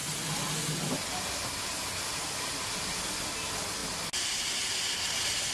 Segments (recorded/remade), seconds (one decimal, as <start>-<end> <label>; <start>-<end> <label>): 0.0-5.5 recorded